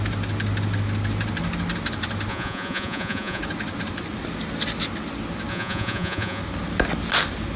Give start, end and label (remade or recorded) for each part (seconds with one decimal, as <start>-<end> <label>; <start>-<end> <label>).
0.0-2.3 recorded; 2.3-3.4 remade; 3.4-5.5 recorded; 5.5-6.4 remade; 6.4-7.6 recorded